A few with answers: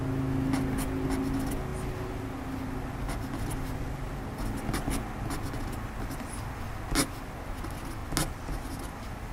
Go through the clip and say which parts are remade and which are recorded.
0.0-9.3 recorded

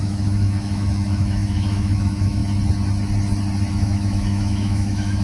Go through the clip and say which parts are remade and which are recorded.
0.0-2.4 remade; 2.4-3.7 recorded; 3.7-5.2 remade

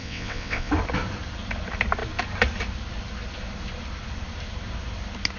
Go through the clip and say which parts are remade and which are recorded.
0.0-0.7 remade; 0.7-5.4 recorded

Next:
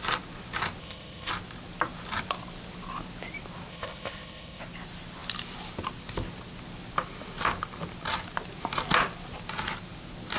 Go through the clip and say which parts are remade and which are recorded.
0.0-0.8 recorded; 0.8-1.3 remade; 1.3-3.7 recorded; 3.7-4.6 remade; 4.6-10.4 recorded

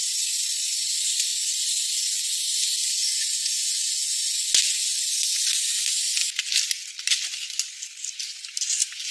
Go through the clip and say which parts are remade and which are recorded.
0.0-3.0 recorded; 3.0-4.3 remade; 4.3-9.1 recorded

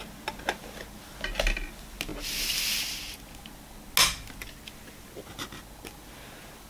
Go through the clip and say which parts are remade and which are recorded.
0.0-6.7 recorded

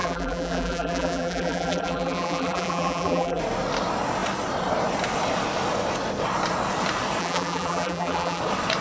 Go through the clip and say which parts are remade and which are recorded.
0.0-3.4 remade; 3.4-7.2 recorded; 7.2-8.4 remade; 8.4-8.8 recorded